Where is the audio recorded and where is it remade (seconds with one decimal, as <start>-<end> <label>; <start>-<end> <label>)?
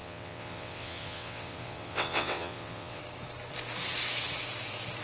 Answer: 0.0-3.0 remade; 3.0-5.0 recorded